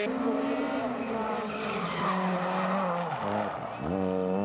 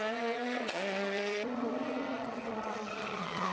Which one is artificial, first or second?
second